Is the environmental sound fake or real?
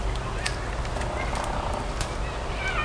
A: real